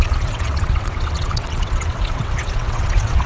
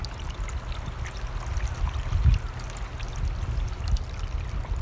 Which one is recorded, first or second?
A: second